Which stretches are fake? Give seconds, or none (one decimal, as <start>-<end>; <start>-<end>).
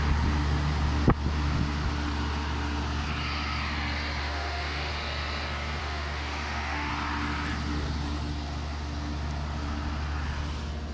4.2-4.9; 5.8-6.9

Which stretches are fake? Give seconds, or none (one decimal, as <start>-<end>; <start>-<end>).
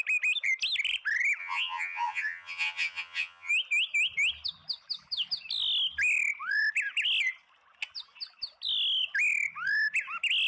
1.4-3.5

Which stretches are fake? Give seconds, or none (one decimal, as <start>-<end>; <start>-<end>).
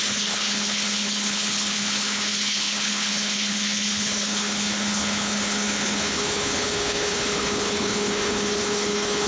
0.0-9.3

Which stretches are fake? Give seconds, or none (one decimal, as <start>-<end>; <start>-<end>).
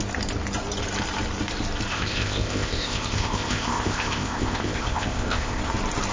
1.9-5.6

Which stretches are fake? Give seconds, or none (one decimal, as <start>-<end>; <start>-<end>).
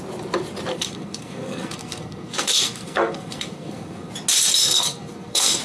0.7-4.1; 4.6-5.6